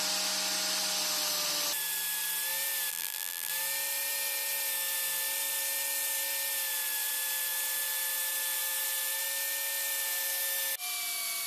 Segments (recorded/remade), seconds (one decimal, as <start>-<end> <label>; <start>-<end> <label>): 0.0-2.9 recorded; 2.9-3.5 remade; 3.5-11.5 recorded